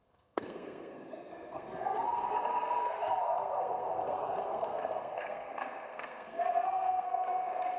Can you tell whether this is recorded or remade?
remade